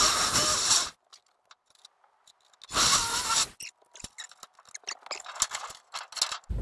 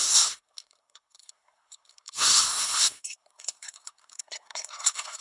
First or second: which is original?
first